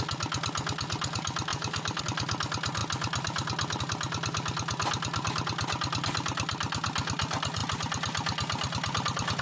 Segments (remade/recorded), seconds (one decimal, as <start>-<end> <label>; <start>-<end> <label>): 0.0-1.5 recorded; 1.5-2.0 remade; 2.0-9.4 recorded